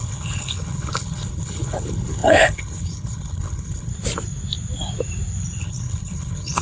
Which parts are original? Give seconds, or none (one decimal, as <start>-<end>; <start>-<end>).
3.9-5.6